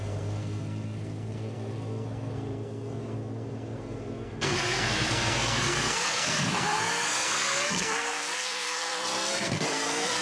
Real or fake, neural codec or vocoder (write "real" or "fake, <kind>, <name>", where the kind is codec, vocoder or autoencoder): fake, codec, SNAC